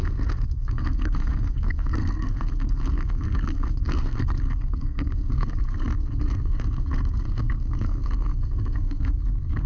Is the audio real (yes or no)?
no